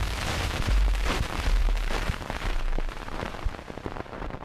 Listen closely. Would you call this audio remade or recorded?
remade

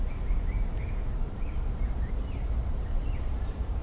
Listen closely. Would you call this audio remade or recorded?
remade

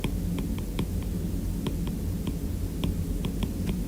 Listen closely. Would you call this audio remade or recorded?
recorded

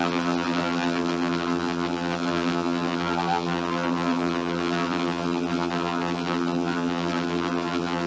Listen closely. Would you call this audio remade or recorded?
remade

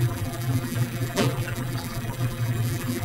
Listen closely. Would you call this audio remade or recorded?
remade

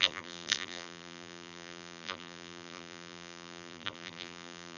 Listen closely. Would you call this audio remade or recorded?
remade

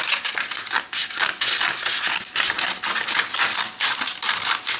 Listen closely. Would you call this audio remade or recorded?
recorded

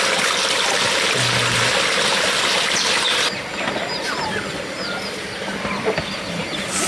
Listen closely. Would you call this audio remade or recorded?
recorded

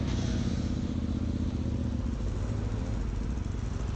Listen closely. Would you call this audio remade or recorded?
recorded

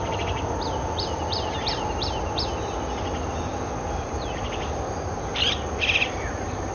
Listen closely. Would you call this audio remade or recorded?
recorded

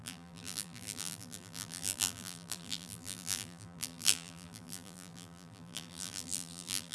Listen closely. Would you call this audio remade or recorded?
remade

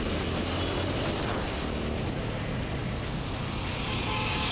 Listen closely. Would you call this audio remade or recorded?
recorded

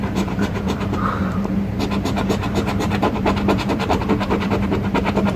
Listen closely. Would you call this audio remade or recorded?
remade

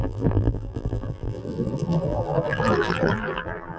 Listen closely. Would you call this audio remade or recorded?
remade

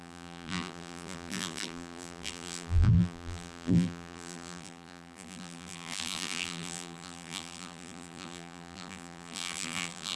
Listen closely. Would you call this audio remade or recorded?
remade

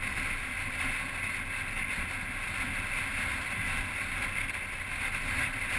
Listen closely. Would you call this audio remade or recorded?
recorded